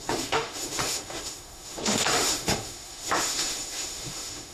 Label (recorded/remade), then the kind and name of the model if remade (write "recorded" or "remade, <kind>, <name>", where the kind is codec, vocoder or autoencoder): remade, autoencoder, DAC-VAE